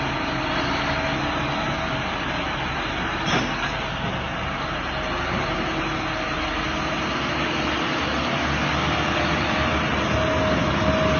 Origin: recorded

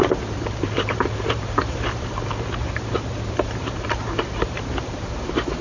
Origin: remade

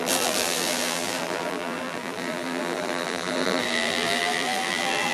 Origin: remade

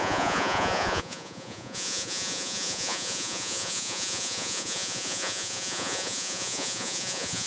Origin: remade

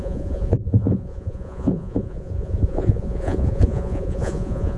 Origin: remade